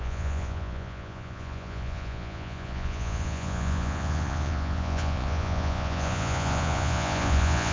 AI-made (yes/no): yes